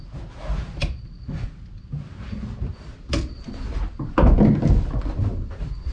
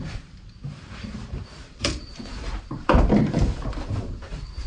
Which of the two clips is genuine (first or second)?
first